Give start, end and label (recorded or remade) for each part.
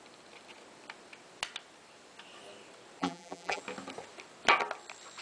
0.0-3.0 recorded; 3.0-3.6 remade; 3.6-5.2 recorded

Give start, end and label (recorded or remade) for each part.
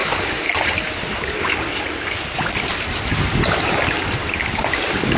0.0-5.2 recorded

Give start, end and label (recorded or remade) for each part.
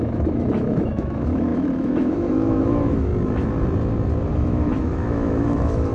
0.0-3.1 remade; 3.1-4.3 recorded; 4.3-5.9 remade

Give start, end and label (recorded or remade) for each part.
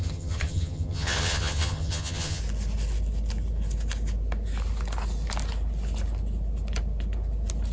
0.0-2.4 remade; 2.4-7.7 recorded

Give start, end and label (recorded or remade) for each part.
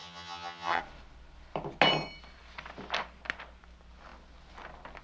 0.0-0.8 remade; 0.8-5.0 recorded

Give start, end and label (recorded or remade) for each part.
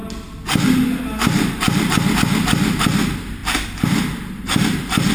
0.0-5.1 recorded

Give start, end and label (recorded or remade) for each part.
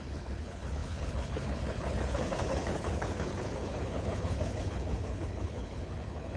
0.0-6.4 remade